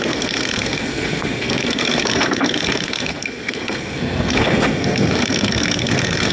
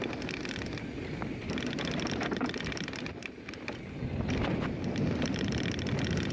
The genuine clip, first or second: second